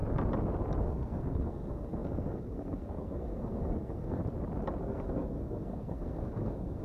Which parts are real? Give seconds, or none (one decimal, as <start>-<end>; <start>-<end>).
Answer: 0.0-0.8; 4.2-4.8